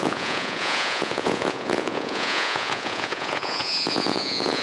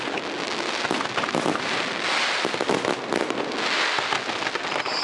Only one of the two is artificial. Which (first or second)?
first